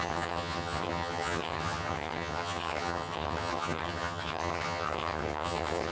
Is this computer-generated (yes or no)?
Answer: yes